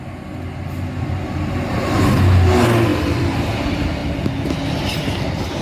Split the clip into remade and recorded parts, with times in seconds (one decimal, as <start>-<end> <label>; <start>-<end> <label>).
0.0-2.9 recorded; 2.9-3.5 remade; 3.5-5.6 recorded